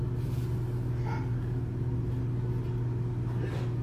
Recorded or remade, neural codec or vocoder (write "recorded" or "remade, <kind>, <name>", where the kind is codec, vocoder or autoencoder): recorded